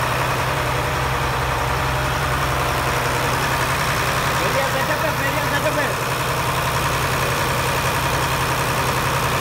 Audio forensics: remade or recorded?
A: remade